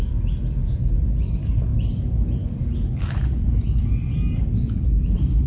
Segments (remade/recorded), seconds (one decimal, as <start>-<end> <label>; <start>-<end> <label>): 0.0-5.5 recorded